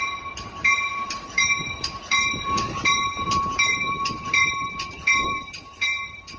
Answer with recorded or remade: remade